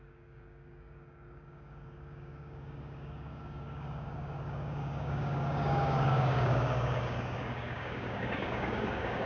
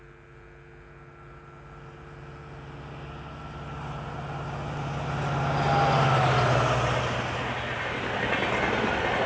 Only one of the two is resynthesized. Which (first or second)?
first